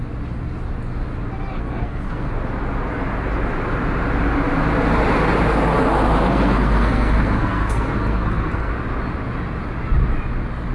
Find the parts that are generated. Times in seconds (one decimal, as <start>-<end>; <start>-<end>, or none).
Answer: 1.5-2.3; 6.3-8.7